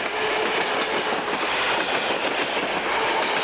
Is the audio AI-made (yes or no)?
no